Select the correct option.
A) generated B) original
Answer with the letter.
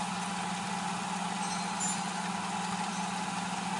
B